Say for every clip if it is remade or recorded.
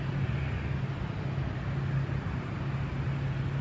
recorded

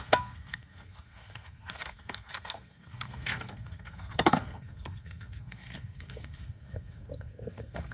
remade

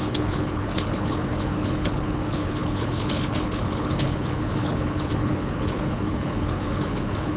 remade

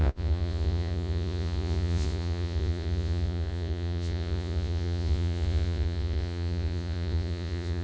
remade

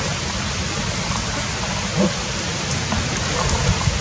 recorded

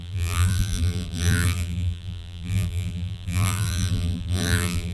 remade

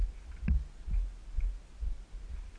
recorded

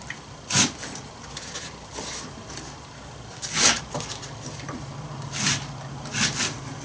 recorded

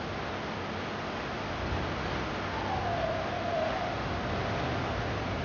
recorded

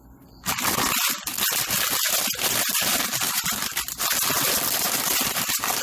remade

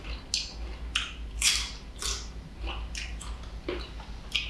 recorded